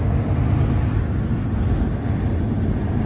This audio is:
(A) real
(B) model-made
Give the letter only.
A